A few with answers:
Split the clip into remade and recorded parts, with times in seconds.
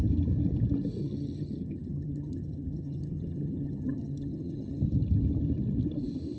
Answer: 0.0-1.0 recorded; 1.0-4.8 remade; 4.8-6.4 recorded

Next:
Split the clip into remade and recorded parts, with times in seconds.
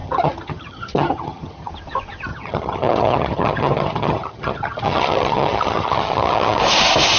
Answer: 0.0-1.7 remade; 1.7-2.3 recorded; 2.3-6.6 remade; 6.6-7.2 recorded